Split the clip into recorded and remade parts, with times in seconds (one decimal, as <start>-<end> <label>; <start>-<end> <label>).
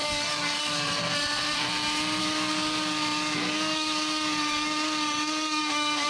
0.0-1.0 remade; 1.0-2.2 recorded; 2.2-6.1 remade